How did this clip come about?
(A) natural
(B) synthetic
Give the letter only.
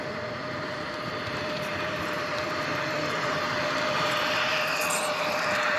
B